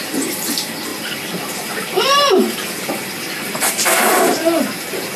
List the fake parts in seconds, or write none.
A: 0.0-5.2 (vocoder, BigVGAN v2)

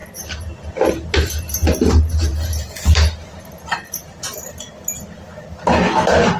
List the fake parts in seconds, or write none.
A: none

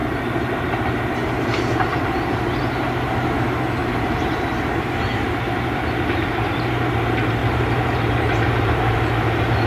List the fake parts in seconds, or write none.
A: 0.0-2.6 (vocoder, BigVGAN v2); 3.8-6.9; 7.4-9.7